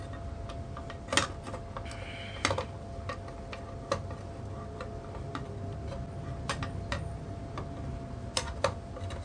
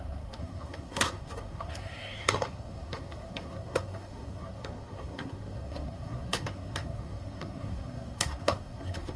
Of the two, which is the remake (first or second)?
second